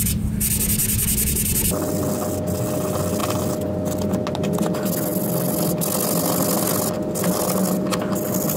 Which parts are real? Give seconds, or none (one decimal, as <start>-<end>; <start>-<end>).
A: 0.0-8.6